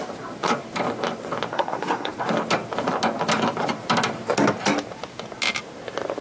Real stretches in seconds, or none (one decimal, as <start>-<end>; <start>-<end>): 0.0-1.5; 2.1-6.2